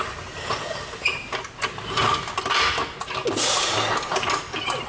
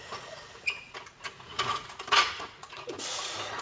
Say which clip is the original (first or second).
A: first